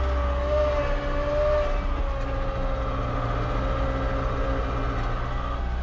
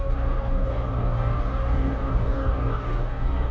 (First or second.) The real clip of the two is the first